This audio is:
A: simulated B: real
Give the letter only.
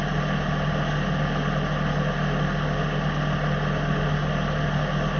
B